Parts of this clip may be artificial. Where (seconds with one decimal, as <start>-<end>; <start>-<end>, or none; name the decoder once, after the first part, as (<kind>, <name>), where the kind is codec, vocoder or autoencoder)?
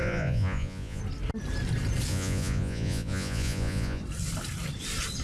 0.0-1.0 (vocoder, Vocos); 2.1-4.0